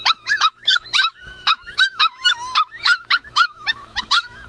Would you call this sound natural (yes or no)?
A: no